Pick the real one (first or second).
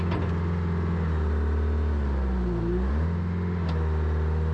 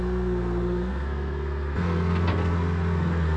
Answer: first